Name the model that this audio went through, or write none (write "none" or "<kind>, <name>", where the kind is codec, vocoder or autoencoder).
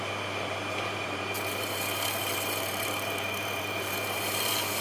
vocoder, BigVGAN v2